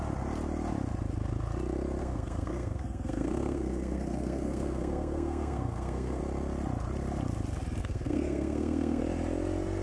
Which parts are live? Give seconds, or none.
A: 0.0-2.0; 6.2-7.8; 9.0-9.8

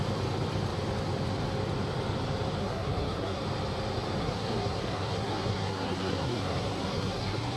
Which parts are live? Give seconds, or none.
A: 0.0-2.6; 3.4-4.2

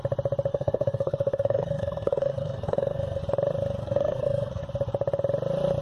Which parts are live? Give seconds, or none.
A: 0.0-0.5; 3.2-3.8; 4.6-5.8

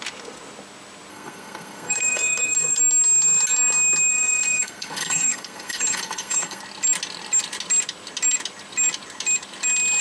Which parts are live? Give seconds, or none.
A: 0.0-1.1; 2.8-4.1; 6.6-10.0

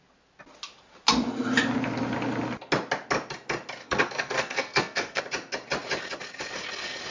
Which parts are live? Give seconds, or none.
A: 0.0-3.8; 5.2-7.1

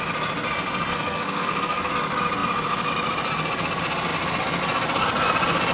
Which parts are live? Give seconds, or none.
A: 0.0-0.9; 1.9-5.7

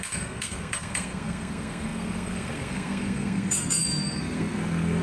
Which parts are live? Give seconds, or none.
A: none

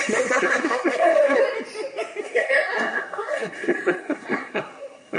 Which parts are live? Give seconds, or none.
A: 1.4-2.2